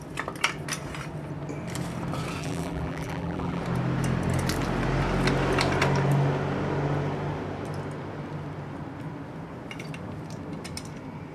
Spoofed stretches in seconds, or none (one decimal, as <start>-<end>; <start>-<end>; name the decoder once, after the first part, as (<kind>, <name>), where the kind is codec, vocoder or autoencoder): 2.4-3.6 (vocoder, BigVGAN v2)